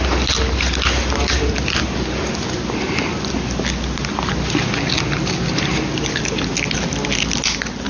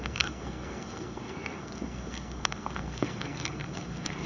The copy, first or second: second